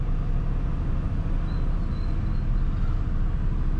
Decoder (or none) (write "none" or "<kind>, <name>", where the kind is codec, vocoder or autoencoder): none